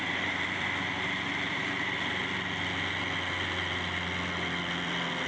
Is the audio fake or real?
real